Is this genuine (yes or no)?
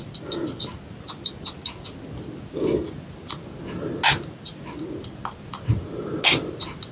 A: yes